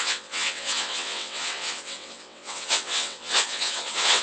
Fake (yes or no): yes